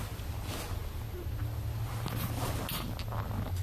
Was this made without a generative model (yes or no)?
yes